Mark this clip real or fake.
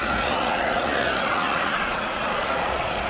fake